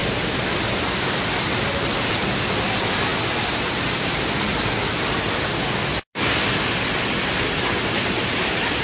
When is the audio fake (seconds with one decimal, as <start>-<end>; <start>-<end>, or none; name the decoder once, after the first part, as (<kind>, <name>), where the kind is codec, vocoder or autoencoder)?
none